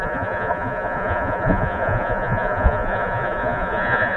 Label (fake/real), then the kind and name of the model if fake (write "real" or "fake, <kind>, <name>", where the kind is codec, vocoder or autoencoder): fake, vocoder, Vocos